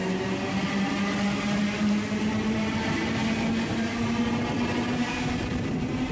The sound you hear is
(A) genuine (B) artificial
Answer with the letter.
A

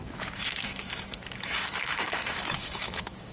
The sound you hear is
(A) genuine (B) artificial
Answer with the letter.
B